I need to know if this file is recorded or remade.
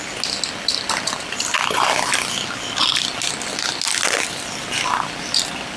recorded